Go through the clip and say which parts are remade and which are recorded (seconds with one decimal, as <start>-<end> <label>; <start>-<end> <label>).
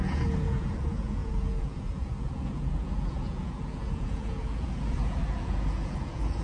0.0-6.4 remade